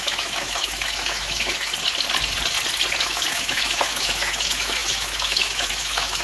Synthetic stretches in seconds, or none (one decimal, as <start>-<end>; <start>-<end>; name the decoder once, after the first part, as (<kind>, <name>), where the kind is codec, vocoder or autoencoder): 0.0-1.7 (autoencoder, DAC-VAE); 3.0-6.2